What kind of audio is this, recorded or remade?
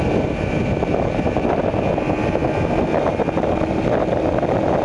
recorded